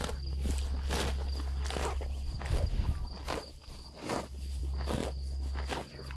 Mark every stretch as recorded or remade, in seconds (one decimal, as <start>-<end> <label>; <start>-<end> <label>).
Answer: 0.0-6.2 recorded